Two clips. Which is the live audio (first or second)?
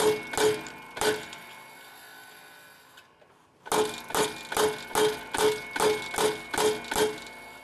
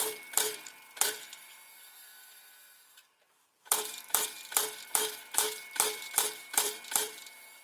first